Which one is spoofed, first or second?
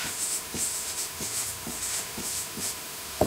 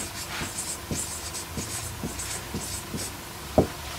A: first